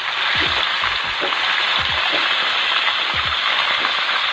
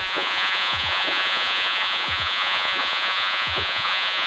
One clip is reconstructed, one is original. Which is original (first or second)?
first